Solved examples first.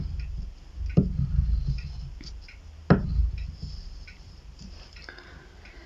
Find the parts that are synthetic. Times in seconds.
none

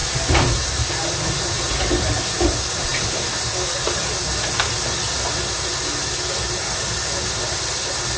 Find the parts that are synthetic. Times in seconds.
0.0-1.7 (vocoder, BigVGAN v2)

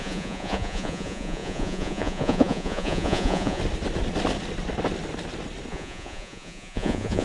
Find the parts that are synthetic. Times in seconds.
0.0-3.6 (vocoder, Vocos); 5.7-7.2

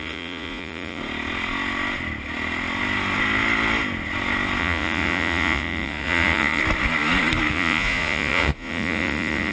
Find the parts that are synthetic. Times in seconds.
0.0-1.0 (vocoder, Vocos); 4.6-6.6; 7.5-9.5

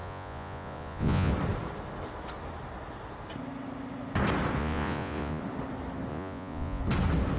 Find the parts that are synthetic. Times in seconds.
0.0-1.3 (vocoder, Vocos); 4.6-5.4; 6.1-6.8